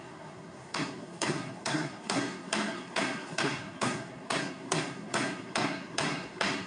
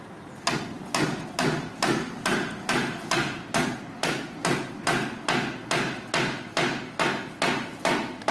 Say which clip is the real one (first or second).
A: second